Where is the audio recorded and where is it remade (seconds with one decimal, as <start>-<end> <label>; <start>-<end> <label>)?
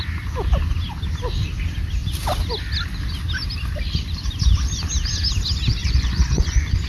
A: 0.0-5.8 recorded; 5.8-6.9 remade